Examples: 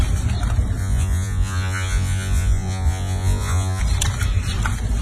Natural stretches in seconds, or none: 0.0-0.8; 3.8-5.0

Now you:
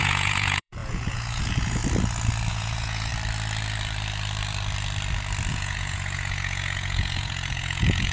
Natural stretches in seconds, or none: 1.8-2.5; 3.1-5.5

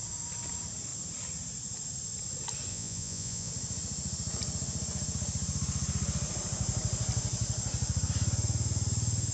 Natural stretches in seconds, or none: 0.0-2.7; 3.5-9.3

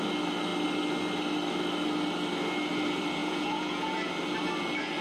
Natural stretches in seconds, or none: 0.0-3.2; 4.1-5.0